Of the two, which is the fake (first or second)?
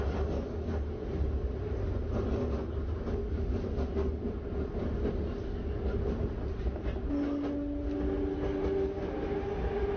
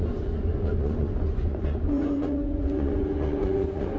second